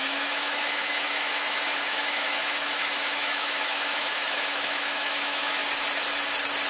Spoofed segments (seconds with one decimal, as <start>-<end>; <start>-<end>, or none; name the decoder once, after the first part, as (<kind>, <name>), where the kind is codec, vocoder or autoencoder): 0.0-5.6 (autoencoder, DAC-VAE)